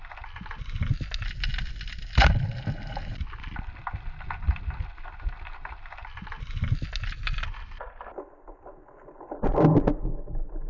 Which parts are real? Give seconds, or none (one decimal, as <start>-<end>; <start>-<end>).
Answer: 0.0-10.7